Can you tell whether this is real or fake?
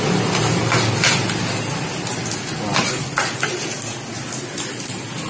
real